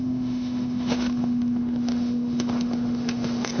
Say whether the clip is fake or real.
fake